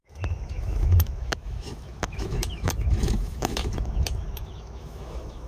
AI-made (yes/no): yes